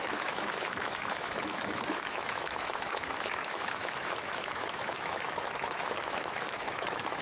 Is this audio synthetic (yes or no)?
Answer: yes